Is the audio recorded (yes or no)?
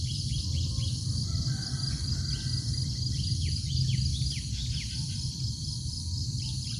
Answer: yes